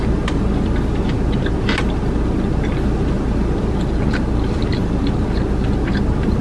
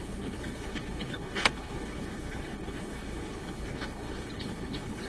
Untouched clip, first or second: first